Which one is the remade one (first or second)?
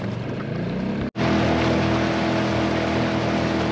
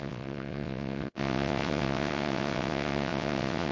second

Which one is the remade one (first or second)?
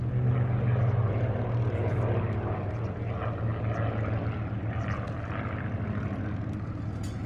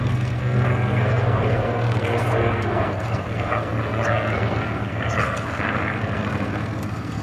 second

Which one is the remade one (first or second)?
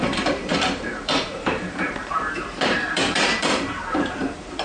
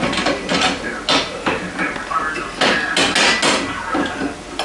first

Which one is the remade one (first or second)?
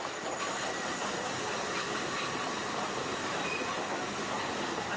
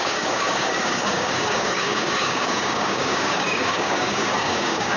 second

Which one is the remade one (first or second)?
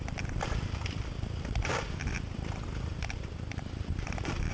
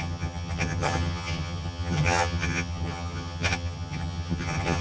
second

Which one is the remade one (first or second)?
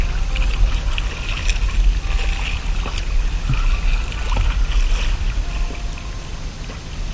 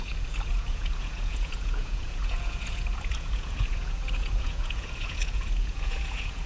second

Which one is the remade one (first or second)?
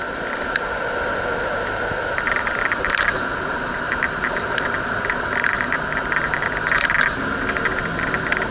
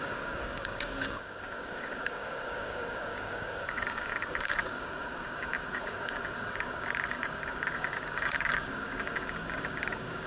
second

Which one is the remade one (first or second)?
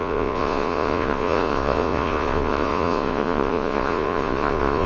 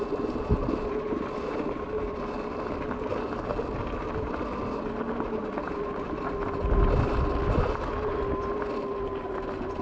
first